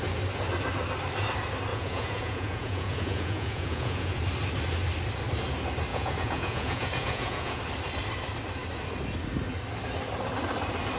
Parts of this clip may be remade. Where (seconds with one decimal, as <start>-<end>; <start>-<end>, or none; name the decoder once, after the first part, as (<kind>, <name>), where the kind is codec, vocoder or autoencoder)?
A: 1.7-4.2 (vocoder, Vocos); 5.9-7.6